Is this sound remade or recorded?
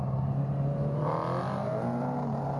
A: recorded